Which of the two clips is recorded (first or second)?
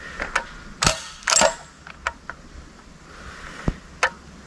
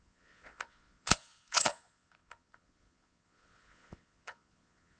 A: first